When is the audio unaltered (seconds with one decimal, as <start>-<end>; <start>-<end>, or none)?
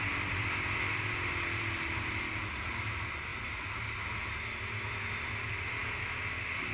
0.0-6.7